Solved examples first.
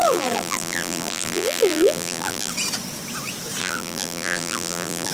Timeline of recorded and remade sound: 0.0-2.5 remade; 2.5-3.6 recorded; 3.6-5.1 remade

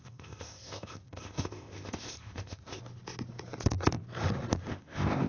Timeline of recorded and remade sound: 0.0-2.8 remade; 2.8-4.7 recorded; 4.7-5.3 remade

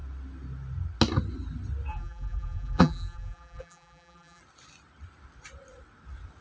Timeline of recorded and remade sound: 0.0-1.9 recorded; 1.9-4.4 remade; 4.4-6.4 recorded